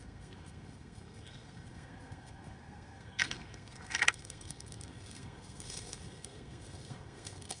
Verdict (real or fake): fake